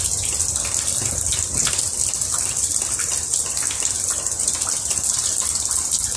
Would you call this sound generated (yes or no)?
no